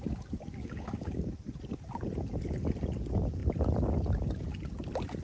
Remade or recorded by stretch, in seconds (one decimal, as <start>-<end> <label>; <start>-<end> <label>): 0.0-0.6 recorded; 0.6-1.2 remade; 1.2-5.2 recorded